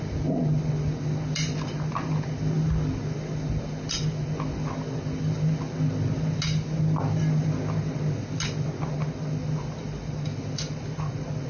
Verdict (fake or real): real